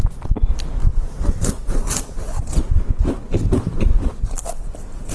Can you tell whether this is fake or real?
real